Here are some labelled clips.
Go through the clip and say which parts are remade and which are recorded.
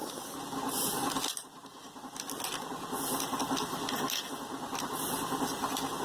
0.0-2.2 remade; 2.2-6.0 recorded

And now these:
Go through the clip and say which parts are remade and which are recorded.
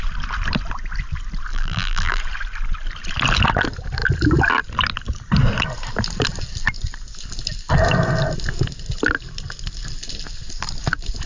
0.0-1.5 recorded; 1.5-2.2 remade; 2.2-11.3 recorded